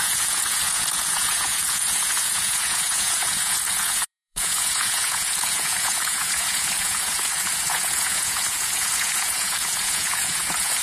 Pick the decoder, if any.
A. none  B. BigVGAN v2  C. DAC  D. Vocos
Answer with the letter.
D